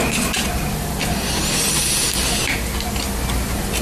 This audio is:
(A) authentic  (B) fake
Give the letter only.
A